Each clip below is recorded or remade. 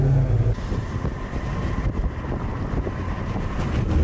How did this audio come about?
recorded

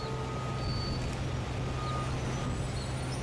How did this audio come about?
recorded